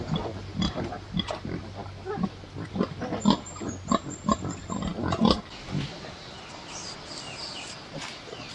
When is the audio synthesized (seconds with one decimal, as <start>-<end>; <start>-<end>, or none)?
none